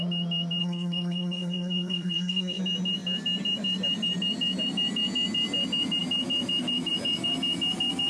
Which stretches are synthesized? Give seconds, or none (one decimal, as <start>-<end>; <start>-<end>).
0.6-2.6